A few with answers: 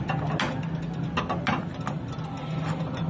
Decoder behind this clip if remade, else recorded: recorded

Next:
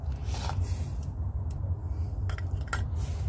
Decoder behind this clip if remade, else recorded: recorded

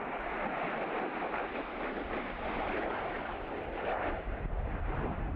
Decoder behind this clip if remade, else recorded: remade, vocoder, BigVGAN v2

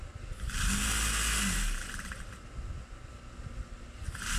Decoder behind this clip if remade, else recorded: recorded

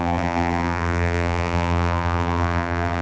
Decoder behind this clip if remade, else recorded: remade, vocoder, BigVGAN v2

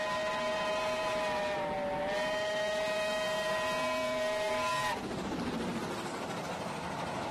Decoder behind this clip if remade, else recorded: recorded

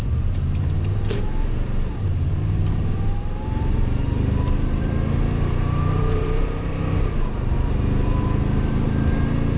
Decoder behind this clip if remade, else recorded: remade, vocoder, BigVGAN v2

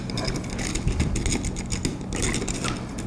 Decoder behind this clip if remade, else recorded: recorded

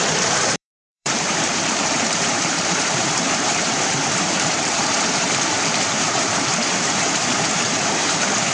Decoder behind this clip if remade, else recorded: remade, vocoder, BigVGAN v2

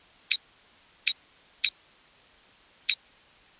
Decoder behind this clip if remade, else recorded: recorded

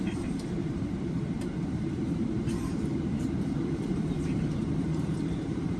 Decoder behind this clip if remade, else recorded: remade, vocoder, BigVGAN v2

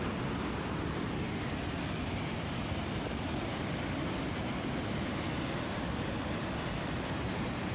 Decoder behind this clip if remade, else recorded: recorded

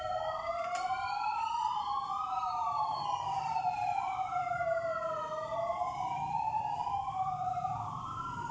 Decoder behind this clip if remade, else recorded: remade, vocoder, BigVGAN v2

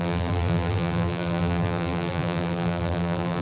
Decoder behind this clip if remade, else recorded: remade, vocoder, BigVGAN v2